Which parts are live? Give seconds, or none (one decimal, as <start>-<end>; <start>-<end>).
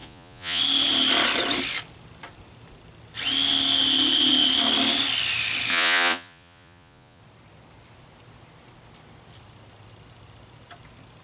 0.6-5.7; 7.2-11.2